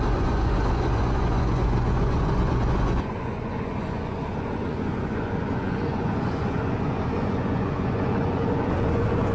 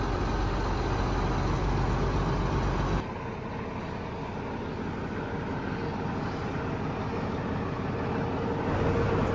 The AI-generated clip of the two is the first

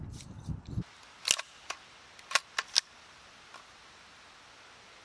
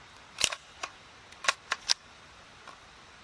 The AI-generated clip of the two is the second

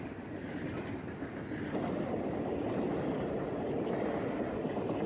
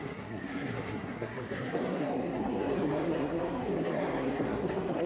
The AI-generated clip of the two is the second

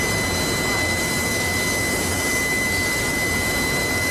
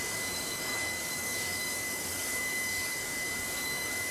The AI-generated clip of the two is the second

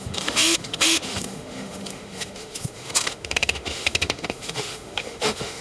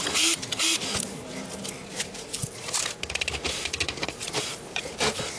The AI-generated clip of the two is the first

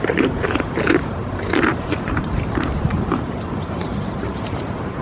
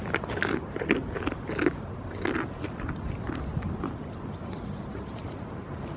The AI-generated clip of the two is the first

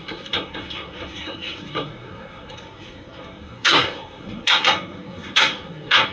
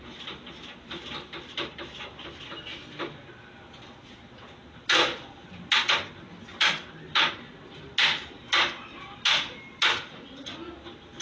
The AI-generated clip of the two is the first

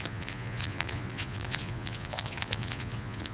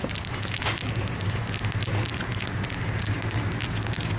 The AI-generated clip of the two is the first